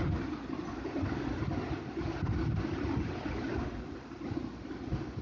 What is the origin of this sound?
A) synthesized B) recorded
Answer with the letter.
B